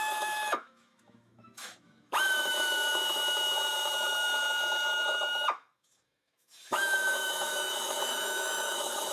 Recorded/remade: remade